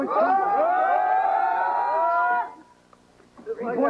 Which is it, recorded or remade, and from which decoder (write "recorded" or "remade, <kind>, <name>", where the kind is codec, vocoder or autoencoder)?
recorded